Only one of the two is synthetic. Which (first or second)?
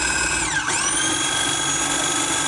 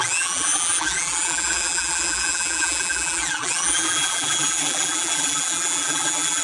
second